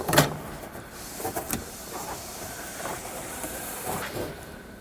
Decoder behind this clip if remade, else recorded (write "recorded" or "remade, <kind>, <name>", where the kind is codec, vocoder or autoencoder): remade, vocoder, BigVGAN v2